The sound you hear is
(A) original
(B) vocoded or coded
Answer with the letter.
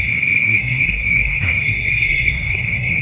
B